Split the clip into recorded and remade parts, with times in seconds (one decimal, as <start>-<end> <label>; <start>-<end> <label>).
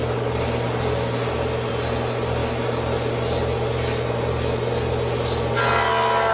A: 0.0-6.3 recorded